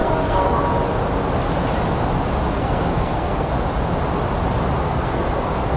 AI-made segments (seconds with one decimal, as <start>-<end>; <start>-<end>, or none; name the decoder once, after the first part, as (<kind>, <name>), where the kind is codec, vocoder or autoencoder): 0.0-0.6 (codec, SNAC); 2.5-3.5; 4.8-5.8